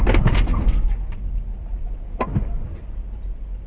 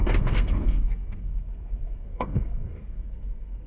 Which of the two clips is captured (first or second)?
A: first